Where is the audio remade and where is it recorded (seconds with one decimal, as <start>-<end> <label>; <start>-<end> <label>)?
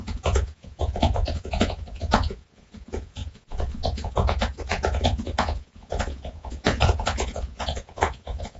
0.0-8.6 remade